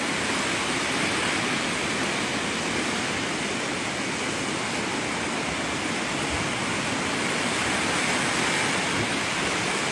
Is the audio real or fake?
real